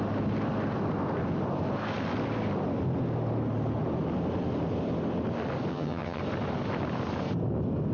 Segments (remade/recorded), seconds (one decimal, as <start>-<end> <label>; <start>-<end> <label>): 0.0-5.7 recorded; 5.7-6.2 remade; 6.2-7.9 recorded